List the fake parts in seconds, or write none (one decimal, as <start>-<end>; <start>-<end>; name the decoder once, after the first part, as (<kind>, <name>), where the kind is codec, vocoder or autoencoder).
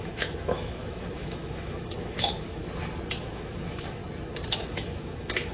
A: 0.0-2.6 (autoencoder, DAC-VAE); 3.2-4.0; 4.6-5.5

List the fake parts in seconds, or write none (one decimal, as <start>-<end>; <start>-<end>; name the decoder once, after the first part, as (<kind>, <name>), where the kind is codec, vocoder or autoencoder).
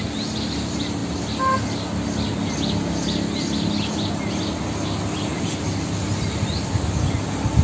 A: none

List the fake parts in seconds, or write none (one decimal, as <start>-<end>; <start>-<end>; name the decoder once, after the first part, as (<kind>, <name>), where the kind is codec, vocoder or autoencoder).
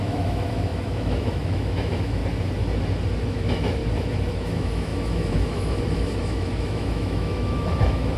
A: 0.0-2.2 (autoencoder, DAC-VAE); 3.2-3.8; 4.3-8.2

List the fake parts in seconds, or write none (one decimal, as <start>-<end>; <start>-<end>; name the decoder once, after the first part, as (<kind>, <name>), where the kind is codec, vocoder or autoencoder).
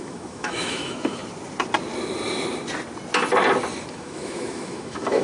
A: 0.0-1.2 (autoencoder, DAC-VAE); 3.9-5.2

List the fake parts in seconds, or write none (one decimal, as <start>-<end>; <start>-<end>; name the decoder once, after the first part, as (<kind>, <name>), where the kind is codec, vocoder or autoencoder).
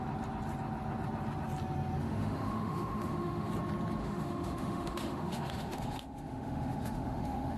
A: 2.0-3.5 (autoencoder, DAC-VAE); 4.0-7.6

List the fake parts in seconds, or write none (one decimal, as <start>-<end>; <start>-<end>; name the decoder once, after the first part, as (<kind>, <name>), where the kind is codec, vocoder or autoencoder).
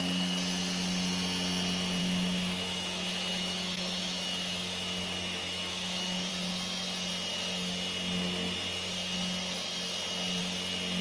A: 2.0-6.3 (autoencoder, DAC-VAE)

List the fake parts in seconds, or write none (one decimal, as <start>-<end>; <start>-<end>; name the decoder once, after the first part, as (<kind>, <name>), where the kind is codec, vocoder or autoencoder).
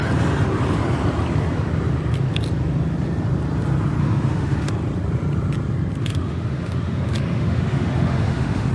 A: 4.0-4.7 (autoencoder, DAC-VAE); 6.0-8.7